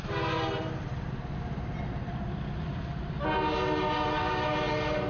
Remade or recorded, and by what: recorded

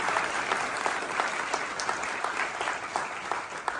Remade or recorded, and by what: recorded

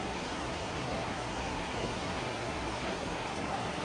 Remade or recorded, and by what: remade, codec, SNAC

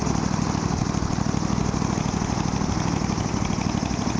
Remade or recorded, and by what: recorded